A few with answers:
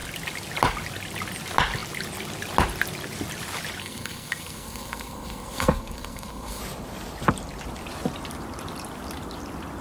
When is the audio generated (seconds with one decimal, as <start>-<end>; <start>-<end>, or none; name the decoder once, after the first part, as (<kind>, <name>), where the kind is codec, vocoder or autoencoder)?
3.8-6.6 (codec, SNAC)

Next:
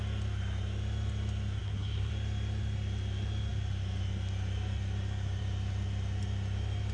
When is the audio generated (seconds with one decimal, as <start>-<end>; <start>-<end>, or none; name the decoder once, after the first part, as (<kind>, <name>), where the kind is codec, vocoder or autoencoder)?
1.6-2.1 (codec, SNAC)

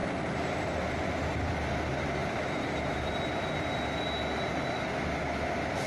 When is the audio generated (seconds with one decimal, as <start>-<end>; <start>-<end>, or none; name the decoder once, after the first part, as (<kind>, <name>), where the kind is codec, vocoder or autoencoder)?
none

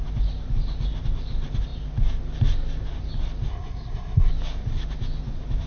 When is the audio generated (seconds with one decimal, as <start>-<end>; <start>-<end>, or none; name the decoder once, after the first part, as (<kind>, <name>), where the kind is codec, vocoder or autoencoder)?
3.5-4.3 (codec, SNAC)